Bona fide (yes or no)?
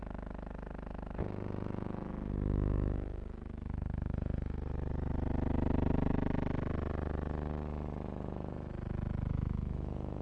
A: no